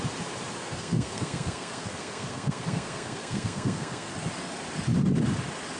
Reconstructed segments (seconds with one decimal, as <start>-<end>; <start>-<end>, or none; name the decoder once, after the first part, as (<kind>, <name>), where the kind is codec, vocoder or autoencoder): 0.6-4.1 (codec, SNAC)